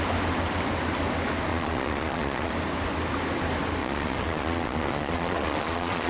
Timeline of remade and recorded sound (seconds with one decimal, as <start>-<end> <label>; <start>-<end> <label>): 0.0-1.5 recorded; 1.5-2.5 remade; 2.5-3.8 recorded; 3.8-6.1 remade